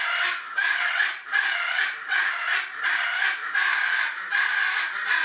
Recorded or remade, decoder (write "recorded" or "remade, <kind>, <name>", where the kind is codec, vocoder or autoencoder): remade, vocoder, BigVGAN v2